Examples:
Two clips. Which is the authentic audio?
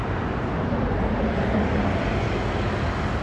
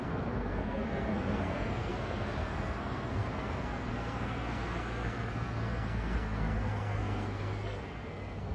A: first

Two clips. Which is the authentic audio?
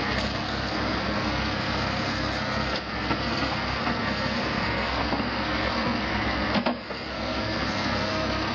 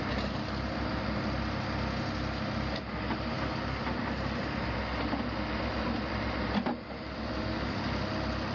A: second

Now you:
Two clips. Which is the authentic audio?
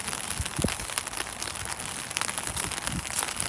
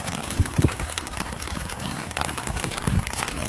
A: first